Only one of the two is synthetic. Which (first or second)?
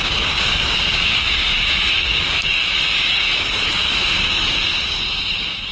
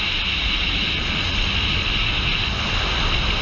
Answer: first